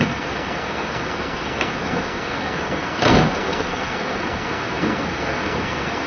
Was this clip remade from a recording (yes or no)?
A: yes